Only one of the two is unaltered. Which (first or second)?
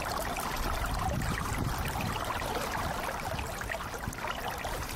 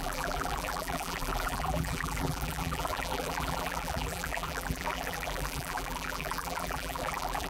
first